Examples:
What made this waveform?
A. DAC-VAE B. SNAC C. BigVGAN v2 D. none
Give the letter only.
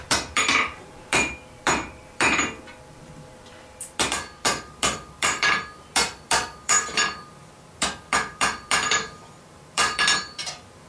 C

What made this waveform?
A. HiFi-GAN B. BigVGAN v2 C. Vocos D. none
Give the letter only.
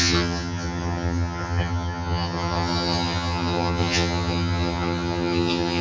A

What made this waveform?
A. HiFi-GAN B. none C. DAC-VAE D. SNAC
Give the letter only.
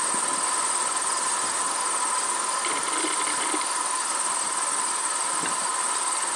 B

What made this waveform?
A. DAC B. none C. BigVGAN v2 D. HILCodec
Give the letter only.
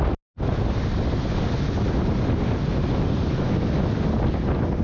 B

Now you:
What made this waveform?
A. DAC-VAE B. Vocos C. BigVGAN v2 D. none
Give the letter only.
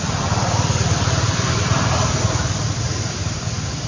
C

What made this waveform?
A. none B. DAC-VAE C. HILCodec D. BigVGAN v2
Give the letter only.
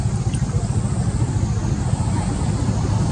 A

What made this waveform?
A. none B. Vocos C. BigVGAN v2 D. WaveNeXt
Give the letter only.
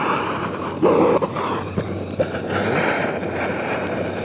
C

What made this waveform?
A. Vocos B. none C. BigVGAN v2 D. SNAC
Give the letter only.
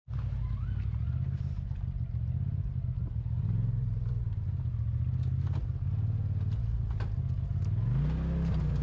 B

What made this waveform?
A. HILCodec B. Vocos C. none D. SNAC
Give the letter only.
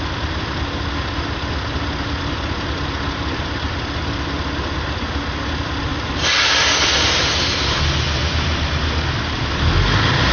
C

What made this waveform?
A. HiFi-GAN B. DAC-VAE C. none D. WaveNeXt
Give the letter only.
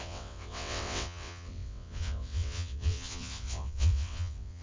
D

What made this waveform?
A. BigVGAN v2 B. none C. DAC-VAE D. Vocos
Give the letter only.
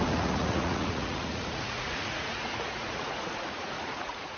D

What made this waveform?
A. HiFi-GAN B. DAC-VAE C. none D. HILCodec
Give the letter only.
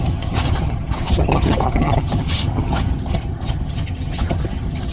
A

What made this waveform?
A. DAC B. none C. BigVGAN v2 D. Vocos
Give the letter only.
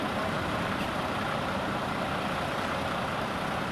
C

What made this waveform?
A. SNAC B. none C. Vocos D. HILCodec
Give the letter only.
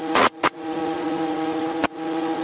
C